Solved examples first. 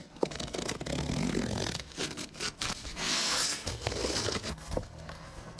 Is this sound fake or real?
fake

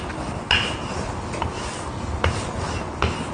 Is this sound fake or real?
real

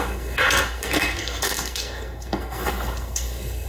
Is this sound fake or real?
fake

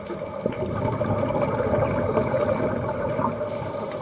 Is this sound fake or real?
real